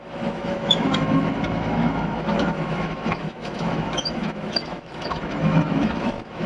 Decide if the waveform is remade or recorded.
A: remade